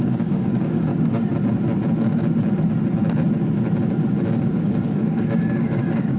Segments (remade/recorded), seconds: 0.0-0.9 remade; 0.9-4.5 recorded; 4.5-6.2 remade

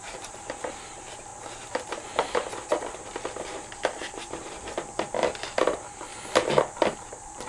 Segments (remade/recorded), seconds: 0.0-2.4 remade; 2.4-4.0 recorded; 4.0-6.1 remade; 6.1-6.6 recorded; 6.6-7.5 remade

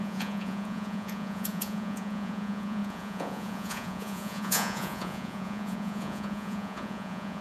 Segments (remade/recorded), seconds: 0.0-7.4 remade